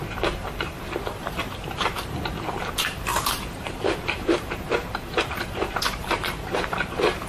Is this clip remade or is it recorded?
remade